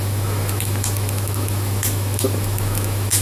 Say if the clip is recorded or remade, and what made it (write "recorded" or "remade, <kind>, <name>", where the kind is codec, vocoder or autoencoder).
remade, autoencoder, DAC-VAE